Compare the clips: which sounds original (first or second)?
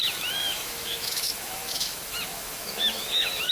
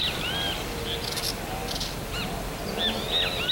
second